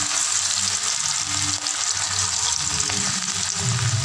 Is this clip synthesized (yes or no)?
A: no